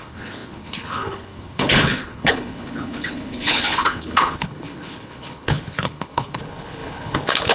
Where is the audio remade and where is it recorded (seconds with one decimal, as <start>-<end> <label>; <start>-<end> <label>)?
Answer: 0.0-7.5 remade